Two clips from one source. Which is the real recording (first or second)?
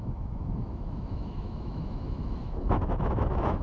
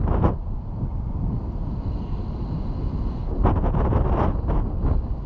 second